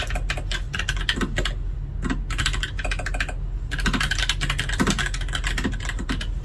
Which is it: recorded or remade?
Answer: recorded